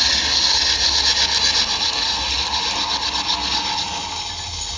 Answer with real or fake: real